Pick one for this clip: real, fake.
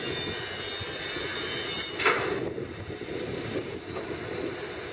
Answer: real